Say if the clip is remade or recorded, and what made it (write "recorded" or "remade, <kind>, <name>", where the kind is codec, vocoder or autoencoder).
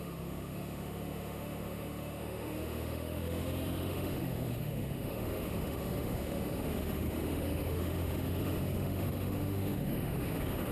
remade, autoencoder, DAC-VAE